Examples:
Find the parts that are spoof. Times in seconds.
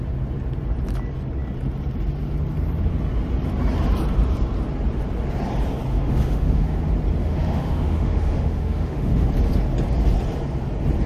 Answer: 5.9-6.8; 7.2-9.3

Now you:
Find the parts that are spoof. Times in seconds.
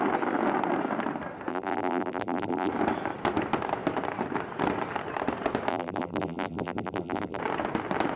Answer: 1.5-2.7; 5.7-7.4